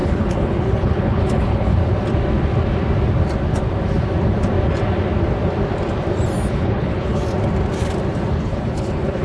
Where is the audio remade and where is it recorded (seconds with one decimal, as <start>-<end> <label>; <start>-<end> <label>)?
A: 0.0-1.8 remade; 1.8-6.5 recorded; 6.5-7.2 remade; 7.2-8.4 recorded; 8.4-9.2 remade